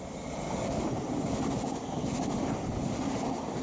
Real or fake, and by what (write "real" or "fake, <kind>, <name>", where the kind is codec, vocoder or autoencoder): real